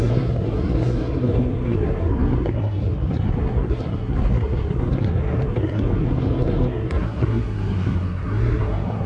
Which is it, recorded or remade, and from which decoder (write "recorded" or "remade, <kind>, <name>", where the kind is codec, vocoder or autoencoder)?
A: remade, codec, SNAC